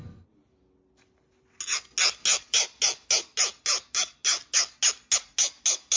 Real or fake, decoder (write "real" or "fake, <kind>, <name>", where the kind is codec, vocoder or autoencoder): real